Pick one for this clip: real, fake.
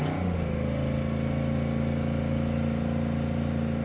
real